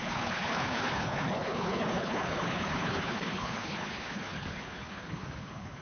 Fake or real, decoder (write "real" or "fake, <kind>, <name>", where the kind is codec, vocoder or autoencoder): fake, codec, HILCodec